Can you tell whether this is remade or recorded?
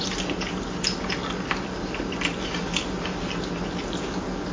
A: recorded